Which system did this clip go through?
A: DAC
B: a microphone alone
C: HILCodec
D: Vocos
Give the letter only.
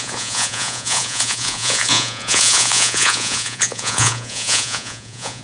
D